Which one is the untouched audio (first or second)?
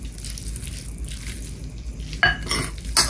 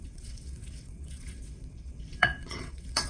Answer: first